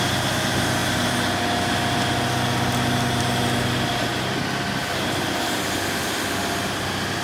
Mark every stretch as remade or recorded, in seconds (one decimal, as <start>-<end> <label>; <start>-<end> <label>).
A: 0.0-7.2 recorded